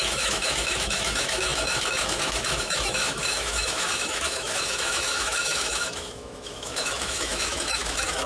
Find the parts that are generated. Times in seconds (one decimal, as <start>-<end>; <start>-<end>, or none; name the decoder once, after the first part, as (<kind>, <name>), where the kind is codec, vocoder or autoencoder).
0.0-8.3 (autoencoder, DAC-VAE)